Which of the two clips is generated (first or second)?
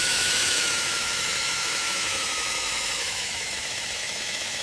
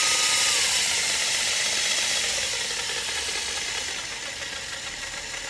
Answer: first